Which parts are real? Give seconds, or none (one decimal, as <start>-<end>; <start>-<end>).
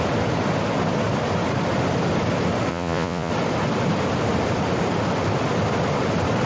0.0-2.7; 3.3-6.5